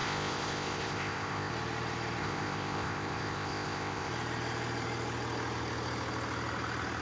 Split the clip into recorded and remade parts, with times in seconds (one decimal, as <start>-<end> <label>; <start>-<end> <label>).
0.0-1.5 remade; 1.5-2.2 recorded; 2.2-4.1 remade; 4.1-7.0 recorded